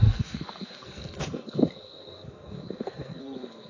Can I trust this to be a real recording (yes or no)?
no